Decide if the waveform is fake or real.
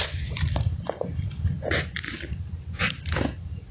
real